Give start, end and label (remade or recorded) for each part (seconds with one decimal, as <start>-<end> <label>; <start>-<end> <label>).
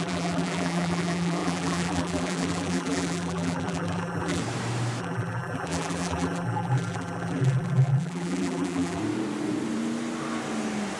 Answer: 0.0-4.4 remade; 4.4-5.0 recorded; 5.0-9.0 remade; 9.0-11.0 recorded